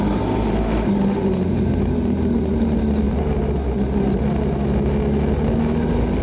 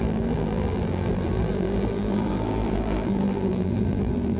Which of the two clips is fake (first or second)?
second